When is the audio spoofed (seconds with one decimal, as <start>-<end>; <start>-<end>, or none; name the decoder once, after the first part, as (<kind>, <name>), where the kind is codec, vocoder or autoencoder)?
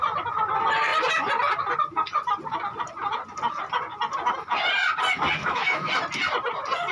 5.4-5.9 (autoencoder, DAC-VAE)